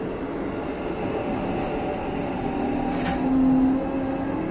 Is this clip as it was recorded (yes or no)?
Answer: yes